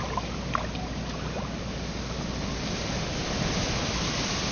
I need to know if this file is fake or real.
real